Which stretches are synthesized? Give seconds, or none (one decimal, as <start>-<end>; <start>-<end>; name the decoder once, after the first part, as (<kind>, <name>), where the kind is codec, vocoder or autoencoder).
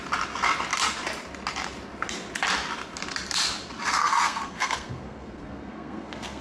4.0-6.4 (codec, SNAC)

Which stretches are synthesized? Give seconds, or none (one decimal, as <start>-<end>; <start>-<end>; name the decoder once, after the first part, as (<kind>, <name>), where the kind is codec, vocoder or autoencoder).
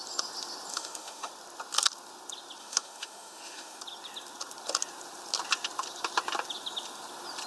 0.7-1.3 (autoencoder, DAC-VAE); 2.6-3.8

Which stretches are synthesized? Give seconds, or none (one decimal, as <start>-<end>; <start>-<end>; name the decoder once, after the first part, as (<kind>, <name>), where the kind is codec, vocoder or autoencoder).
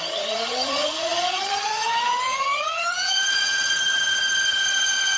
0.0-5.2 (vocoder, HiFi-GAN)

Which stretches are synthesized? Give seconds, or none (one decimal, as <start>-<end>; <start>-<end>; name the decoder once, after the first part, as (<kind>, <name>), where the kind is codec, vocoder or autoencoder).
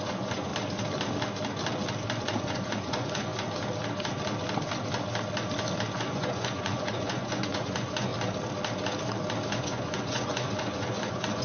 0.0-0.5 (vocoder, Vocos); 2.2-3.3; 5.9-8.1; 9.6-11.4